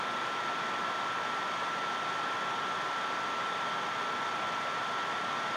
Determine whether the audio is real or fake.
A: real